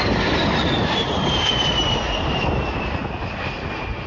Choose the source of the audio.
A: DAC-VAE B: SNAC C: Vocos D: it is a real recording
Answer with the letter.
D